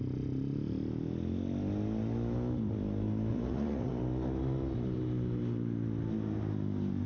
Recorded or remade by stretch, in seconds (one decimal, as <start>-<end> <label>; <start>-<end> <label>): 0.0-3.3 recorded; 3.3-3.9 remade; 3.9-7.1 recorded